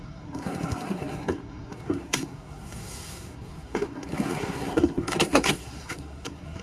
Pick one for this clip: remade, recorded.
remade